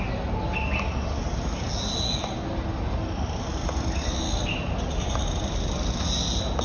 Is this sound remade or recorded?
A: recorded